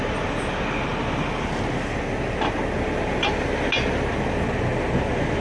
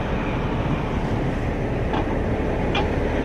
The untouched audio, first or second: first